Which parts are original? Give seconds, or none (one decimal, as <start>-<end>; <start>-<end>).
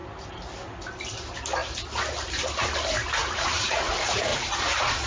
0.0-3.2; 3.9-4.3